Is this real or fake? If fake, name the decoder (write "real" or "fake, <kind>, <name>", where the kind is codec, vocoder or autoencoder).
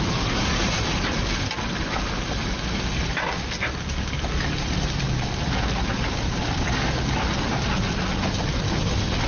real